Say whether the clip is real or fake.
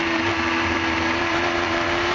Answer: fake